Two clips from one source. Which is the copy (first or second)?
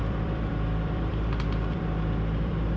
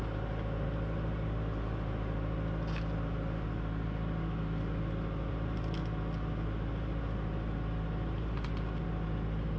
first